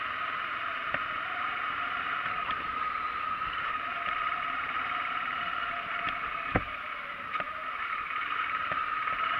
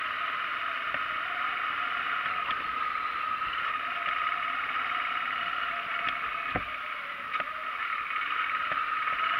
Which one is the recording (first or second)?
second